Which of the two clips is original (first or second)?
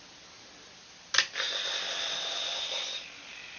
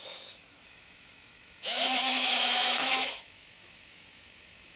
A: first